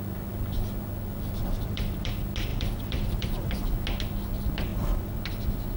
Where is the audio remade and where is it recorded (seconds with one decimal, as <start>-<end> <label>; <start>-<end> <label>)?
0.0-1.4 recorded; 1.4-2.1 remade; 2.1-2.5 recorded; 2.5-3.7 remade; 3.7-4.7 recorded; 4.7-5.2 remade; 5.2-5.8 recorded